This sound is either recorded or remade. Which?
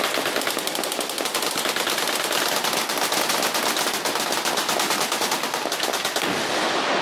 recorded